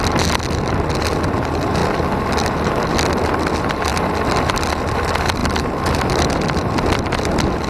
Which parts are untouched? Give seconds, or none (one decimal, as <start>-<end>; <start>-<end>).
0.0-7.7

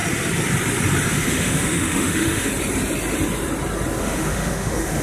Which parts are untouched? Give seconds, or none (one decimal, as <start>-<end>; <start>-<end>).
0.0-1.1; 2.5-4.0

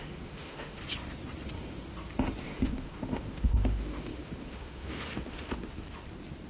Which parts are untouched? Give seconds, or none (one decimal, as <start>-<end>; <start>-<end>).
0.8-2.4; 5.6-6.5